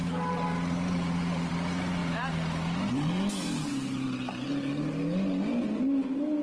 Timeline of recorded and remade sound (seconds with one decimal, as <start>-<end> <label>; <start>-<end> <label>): 0.0-1.5 remade; 1.5-3.7 recorded; 3.7-4.5 remade; 4.5-6.4 recorded